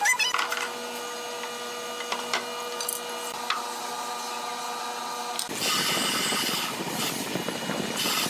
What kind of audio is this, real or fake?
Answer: real